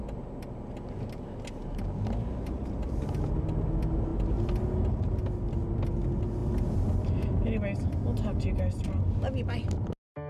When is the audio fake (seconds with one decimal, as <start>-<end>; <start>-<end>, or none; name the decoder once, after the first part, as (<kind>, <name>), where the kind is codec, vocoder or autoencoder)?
none

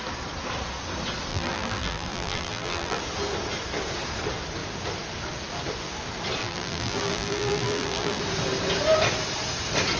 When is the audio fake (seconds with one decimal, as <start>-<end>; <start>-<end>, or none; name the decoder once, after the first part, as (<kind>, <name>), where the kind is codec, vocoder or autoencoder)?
1.3-3.0 (vocoder, BigVGAN v2); 6.4-8.2